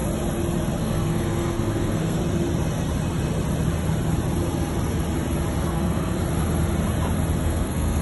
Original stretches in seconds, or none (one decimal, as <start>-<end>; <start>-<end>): 0.0-0.8; 2.2-5.7; 6.2-7.4